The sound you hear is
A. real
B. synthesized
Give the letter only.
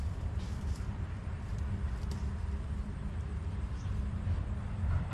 B